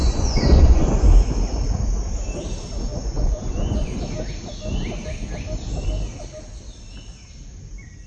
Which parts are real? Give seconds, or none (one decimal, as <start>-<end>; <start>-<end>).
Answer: 0.9-2.9; 3.9-8.1